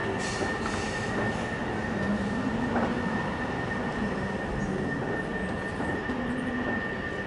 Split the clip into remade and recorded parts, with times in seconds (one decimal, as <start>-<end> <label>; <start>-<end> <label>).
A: 0.0-1.6 recorded; 1.6-4.6 remade; 4.6-5.9 recorded; 5.9-6.5 remade; 6.5-7.3 recorded